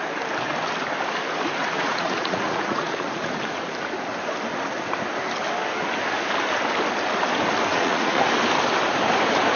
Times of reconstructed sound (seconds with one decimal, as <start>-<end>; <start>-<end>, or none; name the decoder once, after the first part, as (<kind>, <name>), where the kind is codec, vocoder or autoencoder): 1.6-3.4 (vocoder, Vocos); 7.7-8.2